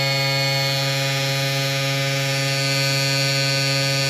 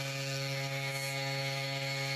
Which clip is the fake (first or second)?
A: second